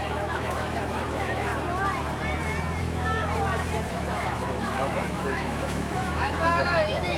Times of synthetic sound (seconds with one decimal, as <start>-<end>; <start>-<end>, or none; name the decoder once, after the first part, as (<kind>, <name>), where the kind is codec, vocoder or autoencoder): 0.0-1.5 (autoencoder, DAC-VAE); 2.8-3.2; 3.9-7.2